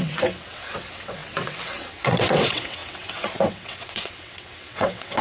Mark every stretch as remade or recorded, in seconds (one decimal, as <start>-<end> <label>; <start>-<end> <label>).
0.0-5.2 remade